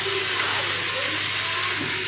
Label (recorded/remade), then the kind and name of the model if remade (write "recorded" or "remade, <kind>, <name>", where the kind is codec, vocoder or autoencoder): recorded